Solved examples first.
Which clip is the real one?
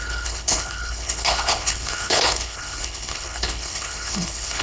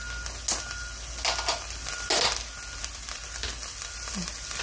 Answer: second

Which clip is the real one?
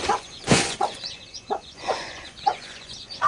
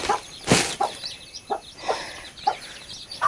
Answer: second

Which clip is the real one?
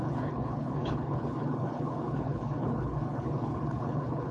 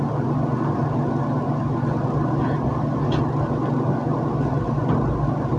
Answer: second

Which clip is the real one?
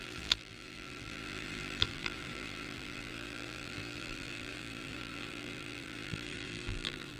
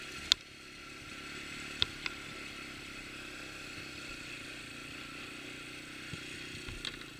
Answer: second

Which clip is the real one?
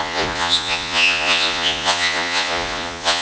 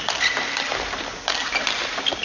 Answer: second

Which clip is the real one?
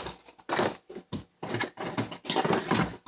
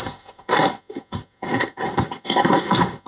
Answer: first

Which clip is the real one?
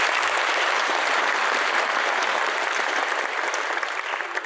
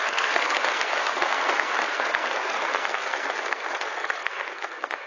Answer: first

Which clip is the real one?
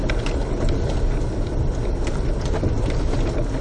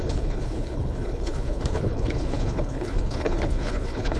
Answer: first